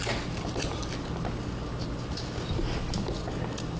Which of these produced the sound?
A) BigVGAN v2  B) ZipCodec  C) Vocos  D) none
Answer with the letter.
D